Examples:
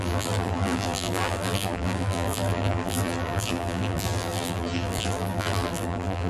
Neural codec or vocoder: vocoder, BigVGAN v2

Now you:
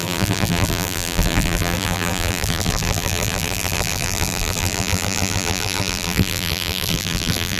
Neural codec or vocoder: vocoder, BigVGAN v2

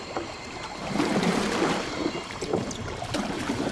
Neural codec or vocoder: vocoder, BigVGAN v2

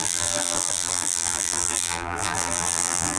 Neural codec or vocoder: vocoder, BigVGAN v2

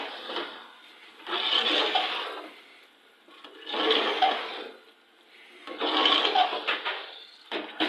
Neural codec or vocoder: none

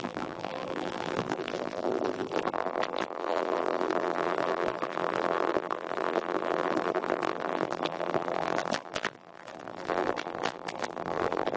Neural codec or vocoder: vocoder, BigVGAN v2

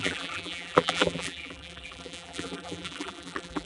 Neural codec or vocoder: vocoder, BigVGAN v2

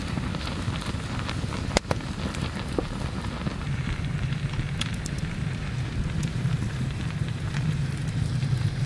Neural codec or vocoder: vocoder, BigVGAN v2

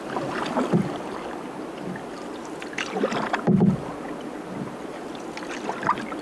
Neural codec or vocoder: none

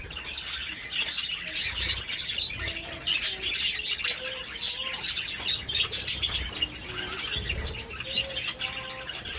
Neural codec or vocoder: none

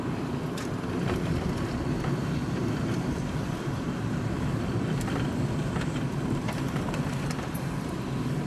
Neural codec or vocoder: vocoder, BigVGAN v2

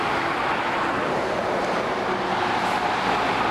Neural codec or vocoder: none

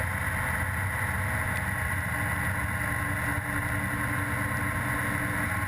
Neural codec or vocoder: none